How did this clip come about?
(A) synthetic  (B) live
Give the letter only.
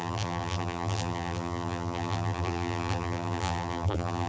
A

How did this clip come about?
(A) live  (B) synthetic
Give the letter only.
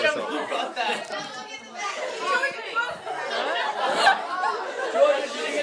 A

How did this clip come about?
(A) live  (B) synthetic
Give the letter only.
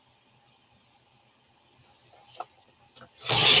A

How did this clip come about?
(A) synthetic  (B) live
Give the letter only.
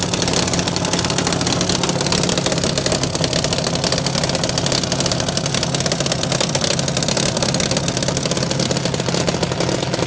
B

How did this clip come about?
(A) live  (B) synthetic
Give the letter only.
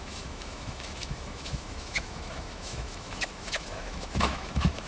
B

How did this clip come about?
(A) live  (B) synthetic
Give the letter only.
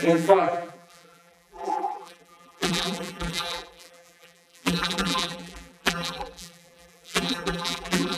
B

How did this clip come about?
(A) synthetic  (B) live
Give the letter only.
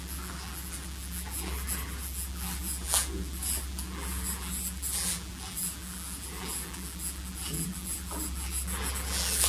A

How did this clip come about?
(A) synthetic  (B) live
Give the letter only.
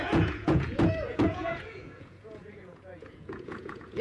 A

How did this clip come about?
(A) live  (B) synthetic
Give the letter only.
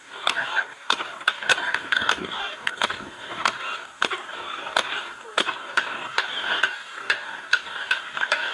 B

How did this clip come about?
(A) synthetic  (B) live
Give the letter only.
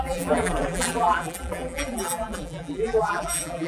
A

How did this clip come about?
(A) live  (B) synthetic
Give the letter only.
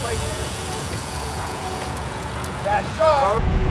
B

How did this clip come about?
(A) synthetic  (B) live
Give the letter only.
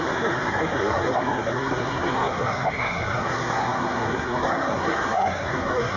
A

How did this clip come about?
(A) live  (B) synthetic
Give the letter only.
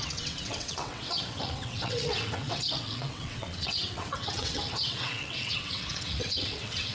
B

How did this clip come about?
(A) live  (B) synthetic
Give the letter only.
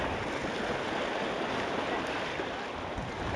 A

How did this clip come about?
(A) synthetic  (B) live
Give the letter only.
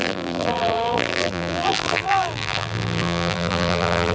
A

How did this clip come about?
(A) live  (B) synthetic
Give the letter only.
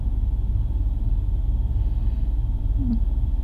B